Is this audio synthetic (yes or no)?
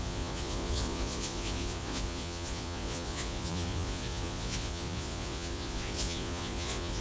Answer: yes